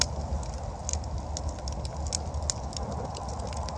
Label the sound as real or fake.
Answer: real